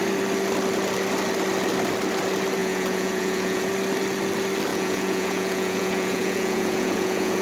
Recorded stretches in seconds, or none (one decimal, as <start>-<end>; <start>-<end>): 0.0-2.6; 3.7-4.7